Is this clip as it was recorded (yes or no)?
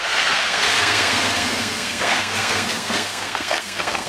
no